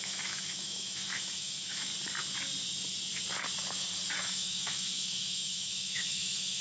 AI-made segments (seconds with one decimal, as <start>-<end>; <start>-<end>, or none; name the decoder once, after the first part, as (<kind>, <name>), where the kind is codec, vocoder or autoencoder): 0.0-1.9 (autoencoder, DAC-VAE); 4.2-6.6